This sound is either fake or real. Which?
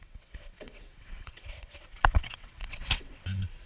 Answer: fake